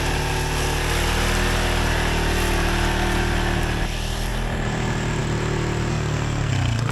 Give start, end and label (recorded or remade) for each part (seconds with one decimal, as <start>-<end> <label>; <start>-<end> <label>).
0.0-5.9 recorded; 5.9-6.9 remade